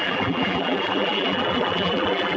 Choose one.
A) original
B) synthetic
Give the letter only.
B